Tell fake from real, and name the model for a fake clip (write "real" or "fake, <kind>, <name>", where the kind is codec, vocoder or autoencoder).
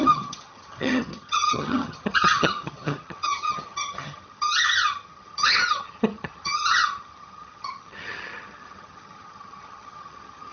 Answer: fake, vocoder, HiFi-GAN